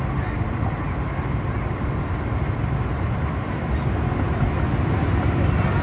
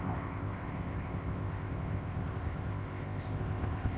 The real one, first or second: first